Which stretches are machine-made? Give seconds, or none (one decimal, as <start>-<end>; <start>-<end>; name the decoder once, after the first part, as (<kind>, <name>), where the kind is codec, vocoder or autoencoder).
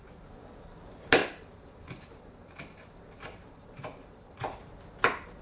1.2-4.4 (vocoder, BigVGAN v2)